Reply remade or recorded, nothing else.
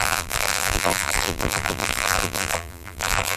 remade